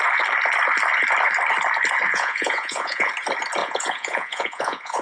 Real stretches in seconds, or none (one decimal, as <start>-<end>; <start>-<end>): 0.0-2.1; 3.1-3.6